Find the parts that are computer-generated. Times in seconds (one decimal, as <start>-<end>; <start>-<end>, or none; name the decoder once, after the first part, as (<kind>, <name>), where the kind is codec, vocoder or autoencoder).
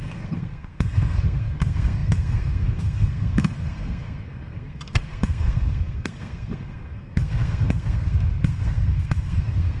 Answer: 0.0-9.8 (codec, SNAC)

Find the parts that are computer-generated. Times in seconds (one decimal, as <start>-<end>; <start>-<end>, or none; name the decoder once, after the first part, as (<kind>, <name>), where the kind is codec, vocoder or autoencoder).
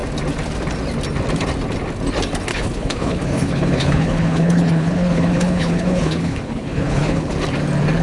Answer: 2.5-7.3 (codec, HILCodec)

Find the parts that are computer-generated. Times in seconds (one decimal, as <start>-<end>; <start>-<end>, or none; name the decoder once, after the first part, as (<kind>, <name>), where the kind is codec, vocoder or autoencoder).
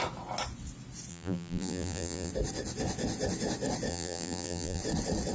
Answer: 1.1-2.3 (vocoder, BigVGAN v2); 3.9-4.8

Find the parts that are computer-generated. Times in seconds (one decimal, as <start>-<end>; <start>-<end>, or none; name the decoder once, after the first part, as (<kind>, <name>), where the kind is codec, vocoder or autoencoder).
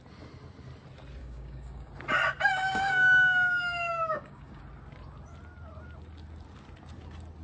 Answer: 1.2-1.9 (codec, DAC); 2.5-4.6